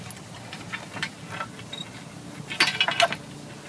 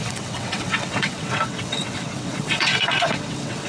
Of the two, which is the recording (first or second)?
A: first